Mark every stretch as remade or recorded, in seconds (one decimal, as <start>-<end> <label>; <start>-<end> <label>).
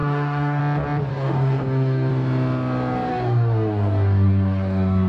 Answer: 0.0-0.6 remade; 0.6-1.1 recorded; 1.1-2.1 remade; 2.1-3.1 recorded; 3.1-5.1 remade